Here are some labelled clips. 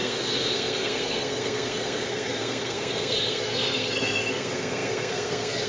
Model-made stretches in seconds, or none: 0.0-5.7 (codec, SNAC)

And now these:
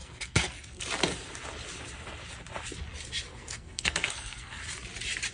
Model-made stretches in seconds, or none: 0.0-0.8 (codec, SNAC); 3.3-4.6